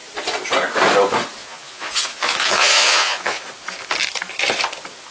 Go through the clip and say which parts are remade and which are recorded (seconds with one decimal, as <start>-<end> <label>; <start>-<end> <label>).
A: 0.0-1.4 recorded; 1.4-3.4 remade; 3.4-5.1 recorded